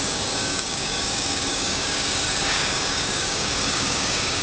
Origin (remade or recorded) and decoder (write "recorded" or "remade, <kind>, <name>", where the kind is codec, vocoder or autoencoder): remade, codec, DAC